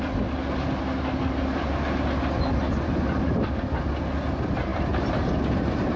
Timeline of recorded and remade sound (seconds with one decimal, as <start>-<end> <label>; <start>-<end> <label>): 0.0-4.7 recorded; 4.7-5.3 remade; 5.3-6.0 recorded